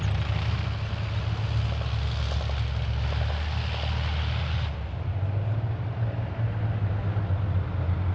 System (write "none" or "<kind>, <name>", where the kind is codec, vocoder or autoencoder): none